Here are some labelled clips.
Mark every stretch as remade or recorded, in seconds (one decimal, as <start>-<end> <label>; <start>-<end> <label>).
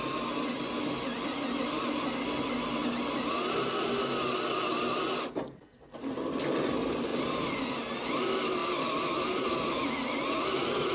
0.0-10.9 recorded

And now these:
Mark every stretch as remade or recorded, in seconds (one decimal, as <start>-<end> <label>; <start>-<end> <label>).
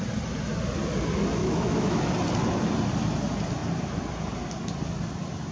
0.0-1.4 recorded; 1.4-2.0 remade; 2.0-5.5 recorded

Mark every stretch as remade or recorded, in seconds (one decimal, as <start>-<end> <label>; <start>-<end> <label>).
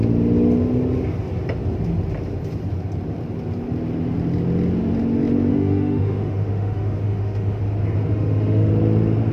0.0-5.5 recorded; 5.5-7.6 remade; 7.6-8.1 recorded; 8.1-8.7 remade; 8.7-9.3 recorded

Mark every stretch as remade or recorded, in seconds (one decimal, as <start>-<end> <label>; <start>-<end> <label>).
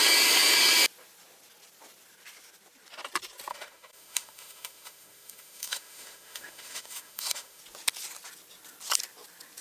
0.0-3.5 recorded; 3.5-7.6 remade; 7.6-9.6 recorded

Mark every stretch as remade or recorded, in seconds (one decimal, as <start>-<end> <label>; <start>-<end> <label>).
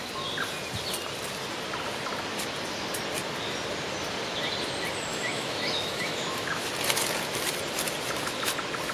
0.0-5.1 recorded; 5.1-6.7 remade; 6.7-8.9 recorded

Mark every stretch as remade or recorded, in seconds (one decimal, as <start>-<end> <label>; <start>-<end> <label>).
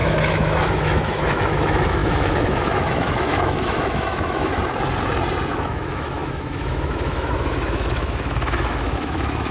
0.0-4.5 remade; 4.5-5.5 recorded; 5.5-9.5 remade